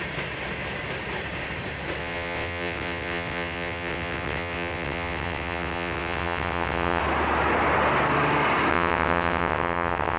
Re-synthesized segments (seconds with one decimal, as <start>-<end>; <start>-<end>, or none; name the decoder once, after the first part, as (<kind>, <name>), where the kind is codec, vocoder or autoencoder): 2.0-7.0 (vocoder, WaveNeXt); 8.7-10.2